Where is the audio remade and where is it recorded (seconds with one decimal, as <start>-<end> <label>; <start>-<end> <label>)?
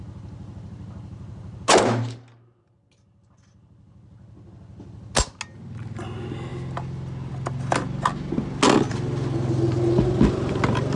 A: 0.0-11.0 recorded